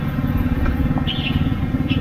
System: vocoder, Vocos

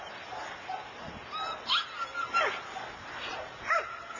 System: none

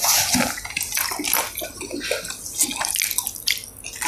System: none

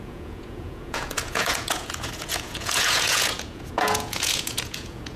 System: vocoder, Vocos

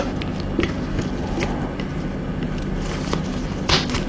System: none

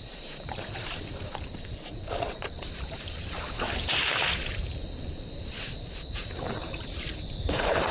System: vocoder, BigVGAN v2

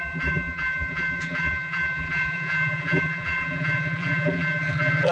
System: vocoder, BigVGAN v2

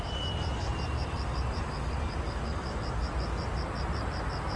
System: none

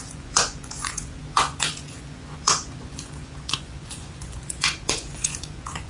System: vocoder, Vocos